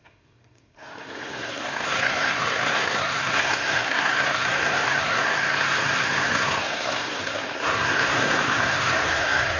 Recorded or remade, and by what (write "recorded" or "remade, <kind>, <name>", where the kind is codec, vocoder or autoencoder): remade, codec, SNAC